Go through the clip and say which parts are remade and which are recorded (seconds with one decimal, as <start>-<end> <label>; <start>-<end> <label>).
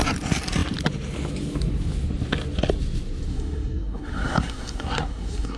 0.0-3.3 recorded; 3.3-5.6 remade